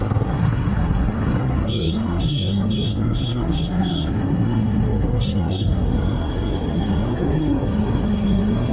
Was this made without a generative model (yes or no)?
no